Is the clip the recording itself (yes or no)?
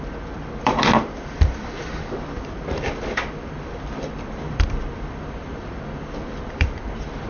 no